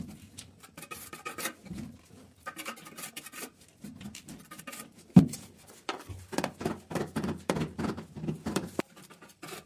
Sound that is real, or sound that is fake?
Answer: fake